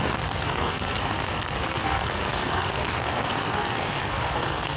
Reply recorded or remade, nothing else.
remade